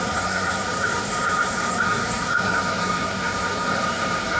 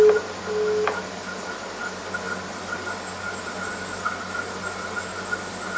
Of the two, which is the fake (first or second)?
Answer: first